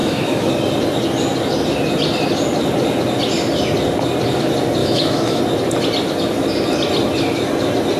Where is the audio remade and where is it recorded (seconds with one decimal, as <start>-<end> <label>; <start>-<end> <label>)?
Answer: 0.0-0.5 remade; 0.5-4.8 recorded; 4.8-5.4 remade; 5.4-8.0 recorded